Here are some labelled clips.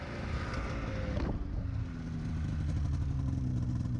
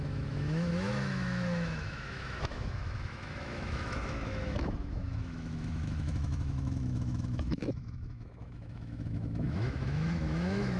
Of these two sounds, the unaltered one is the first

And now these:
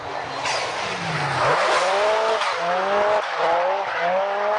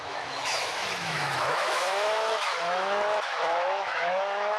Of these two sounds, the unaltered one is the first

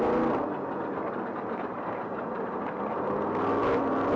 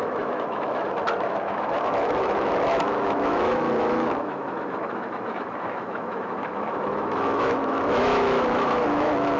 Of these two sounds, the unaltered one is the first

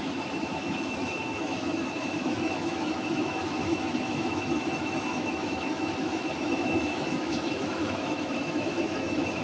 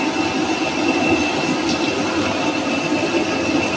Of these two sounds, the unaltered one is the second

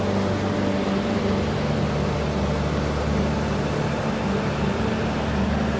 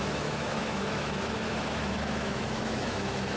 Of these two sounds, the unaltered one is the first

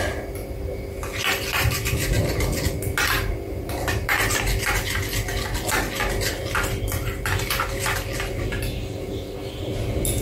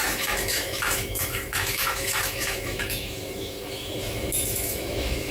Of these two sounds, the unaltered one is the first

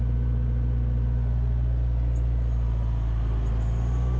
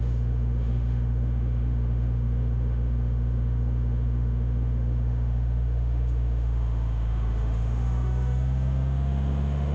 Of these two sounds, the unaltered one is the first